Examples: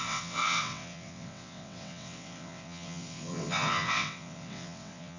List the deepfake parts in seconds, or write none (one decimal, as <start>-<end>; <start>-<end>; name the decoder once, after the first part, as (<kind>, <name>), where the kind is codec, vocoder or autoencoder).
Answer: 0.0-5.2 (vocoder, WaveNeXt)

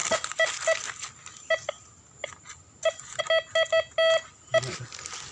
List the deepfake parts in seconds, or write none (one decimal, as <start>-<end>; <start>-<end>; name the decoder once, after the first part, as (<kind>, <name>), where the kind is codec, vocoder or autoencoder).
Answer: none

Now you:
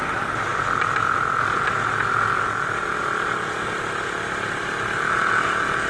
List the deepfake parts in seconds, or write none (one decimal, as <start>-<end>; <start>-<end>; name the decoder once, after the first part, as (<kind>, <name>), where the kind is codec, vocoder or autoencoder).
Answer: none